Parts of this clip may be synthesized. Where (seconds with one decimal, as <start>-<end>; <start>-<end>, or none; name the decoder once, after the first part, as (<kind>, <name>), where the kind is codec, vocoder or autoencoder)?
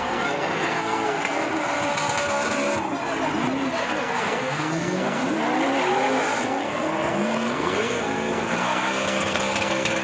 0.0-1.5 (codec, SNAC); 3.8-5.2; 6.4-10.0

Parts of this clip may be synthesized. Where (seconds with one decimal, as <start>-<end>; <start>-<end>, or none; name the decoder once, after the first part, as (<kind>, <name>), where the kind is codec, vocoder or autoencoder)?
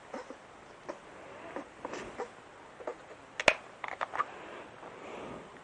none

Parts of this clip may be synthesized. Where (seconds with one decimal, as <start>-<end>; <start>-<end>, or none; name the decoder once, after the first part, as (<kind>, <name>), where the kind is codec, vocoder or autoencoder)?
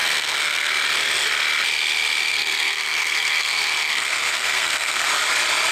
0.0-0.7 (codec, SNAC); 2.3-5.1